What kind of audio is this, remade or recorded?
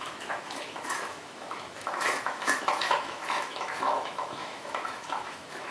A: remade